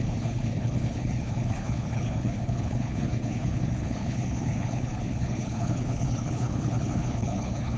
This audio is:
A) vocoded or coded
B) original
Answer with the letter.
A